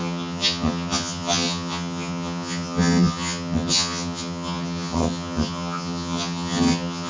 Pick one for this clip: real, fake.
fake